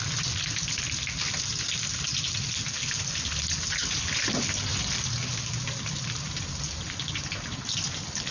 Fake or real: real